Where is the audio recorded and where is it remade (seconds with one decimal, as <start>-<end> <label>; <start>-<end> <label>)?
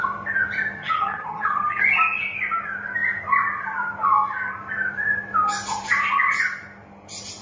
0.0-0.8 recorded; 0.8-1.8 remade; 1.8-7.4 recorded